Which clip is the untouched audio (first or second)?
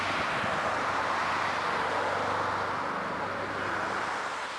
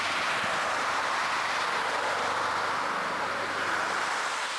first